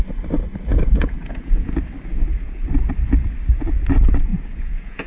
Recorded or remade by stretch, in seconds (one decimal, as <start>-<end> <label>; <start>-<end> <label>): 0.0-0.7 recorded; 0.7-1.7 remade; 1.7-2.1 recorded; 2.1-2.7 remade; 2.7-4.3 recorded; 4.3-5.1 remade